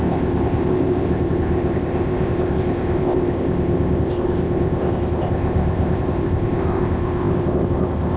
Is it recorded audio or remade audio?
remade